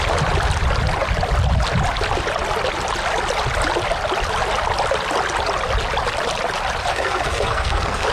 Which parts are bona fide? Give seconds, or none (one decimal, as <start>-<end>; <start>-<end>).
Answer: 0.0-6.9

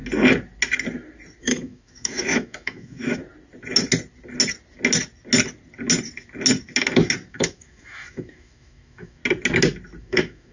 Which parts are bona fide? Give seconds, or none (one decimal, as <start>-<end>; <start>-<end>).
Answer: 0.0-1.4; 3.2-7.3; 9.2-10.0

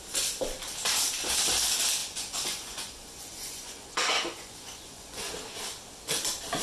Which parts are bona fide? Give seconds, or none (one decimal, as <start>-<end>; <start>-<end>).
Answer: 0.0-2.0; 5.3-6.6

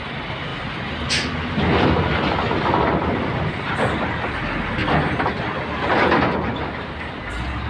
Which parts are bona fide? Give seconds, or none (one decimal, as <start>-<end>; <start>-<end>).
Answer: 0.0-7.7

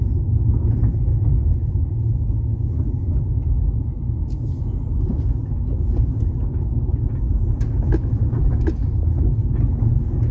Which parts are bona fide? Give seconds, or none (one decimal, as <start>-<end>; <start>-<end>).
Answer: 0.0-10.3

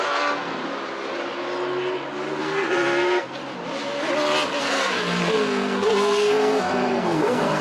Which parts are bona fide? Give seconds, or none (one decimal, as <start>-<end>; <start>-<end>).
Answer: 0.6-2.4; 3.4-4.6

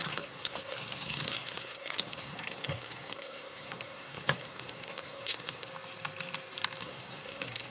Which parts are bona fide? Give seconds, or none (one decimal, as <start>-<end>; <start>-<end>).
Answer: 5.7-6.8

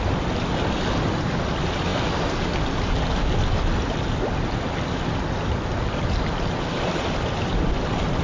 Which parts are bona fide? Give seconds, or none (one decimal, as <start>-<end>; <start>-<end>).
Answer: 0.0-8.2